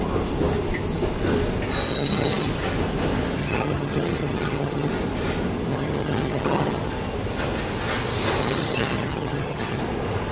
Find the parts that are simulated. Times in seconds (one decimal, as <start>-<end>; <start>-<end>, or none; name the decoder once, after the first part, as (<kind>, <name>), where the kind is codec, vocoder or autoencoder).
1.9-2.5 (vocoder, HiFi-GAN); 3.4-4.9; 5.7-6.9; 8.4-9.8